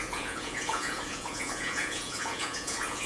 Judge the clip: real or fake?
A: fake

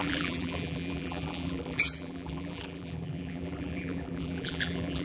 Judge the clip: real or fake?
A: fake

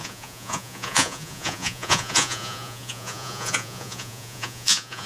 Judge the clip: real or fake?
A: fake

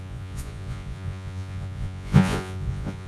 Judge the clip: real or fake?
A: fake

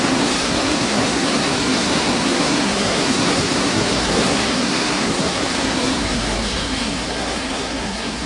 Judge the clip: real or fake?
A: fake